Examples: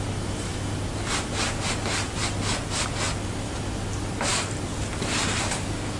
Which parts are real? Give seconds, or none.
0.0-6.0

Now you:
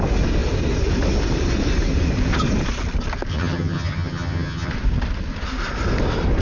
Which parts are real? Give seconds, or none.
0.0-3.3; 4.7-6.4

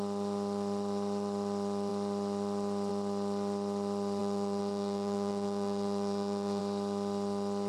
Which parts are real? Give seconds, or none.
0.0-4.2; 6.6-7.7

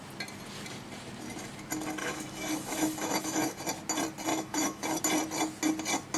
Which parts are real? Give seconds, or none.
0.0-2.0; 3.6-4.3; 5.0-6.2

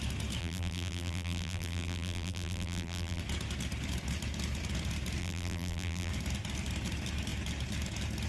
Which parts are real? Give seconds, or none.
0.0-0.4; 3.2-5.2; 6.1-8.3

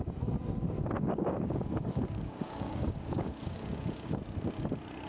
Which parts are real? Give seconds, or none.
0.0-1.1; 4.2-5.1

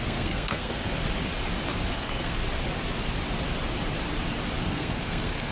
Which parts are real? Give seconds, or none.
1.0-1.9; 2.4-4.6

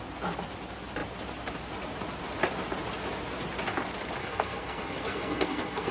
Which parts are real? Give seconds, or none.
0.0-4.2